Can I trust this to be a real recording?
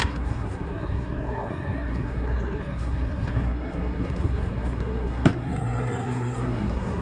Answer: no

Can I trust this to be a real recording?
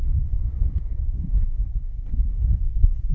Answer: no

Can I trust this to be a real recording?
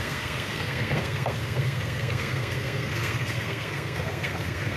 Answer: no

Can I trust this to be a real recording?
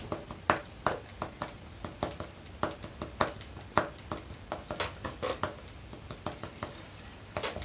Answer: yes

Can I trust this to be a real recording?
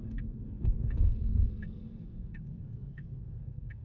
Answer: no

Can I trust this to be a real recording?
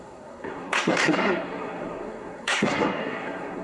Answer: no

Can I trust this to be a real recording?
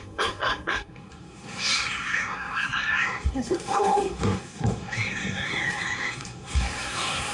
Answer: no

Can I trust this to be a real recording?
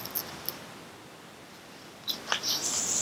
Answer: yes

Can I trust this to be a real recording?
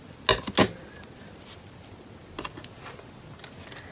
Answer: yes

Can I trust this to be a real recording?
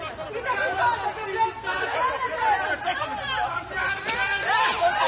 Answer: yes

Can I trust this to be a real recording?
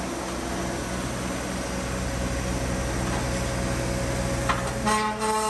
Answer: yes